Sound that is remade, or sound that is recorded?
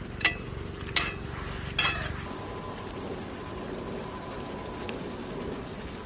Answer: recorded